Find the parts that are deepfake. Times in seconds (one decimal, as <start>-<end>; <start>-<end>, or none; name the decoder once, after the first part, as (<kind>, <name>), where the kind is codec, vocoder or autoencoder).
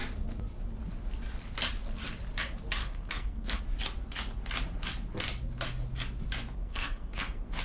2.8-3.6 (codec, SNAC); 6.6-7.6